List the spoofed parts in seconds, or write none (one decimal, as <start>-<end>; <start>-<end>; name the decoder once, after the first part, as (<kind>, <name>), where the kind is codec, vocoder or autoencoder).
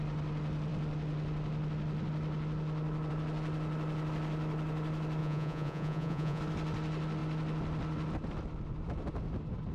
5.2-6.4 (vocoder, Vocos)